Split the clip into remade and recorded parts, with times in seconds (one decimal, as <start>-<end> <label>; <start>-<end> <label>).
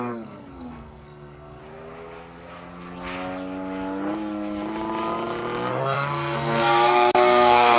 0.0-1.6 remade; 1.6-5.7 recorded; 5.7-7.8 remade